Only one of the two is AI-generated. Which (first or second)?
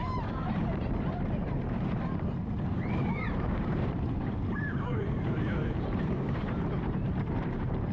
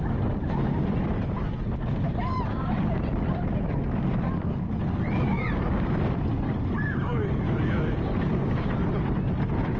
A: first